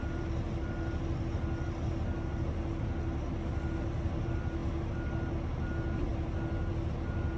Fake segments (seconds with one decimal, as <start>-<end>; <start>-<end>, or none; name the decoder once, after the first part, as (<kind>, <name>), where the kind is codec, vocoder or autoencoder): none